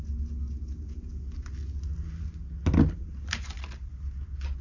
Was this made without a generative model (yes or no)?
yes